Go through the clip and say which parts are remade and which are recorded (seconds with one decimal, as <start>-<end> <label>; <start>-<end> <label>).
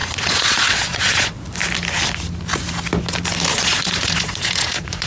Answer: 0.0-1.4 remade; 1.4-3.5 recorded; 3.5-5.1 remade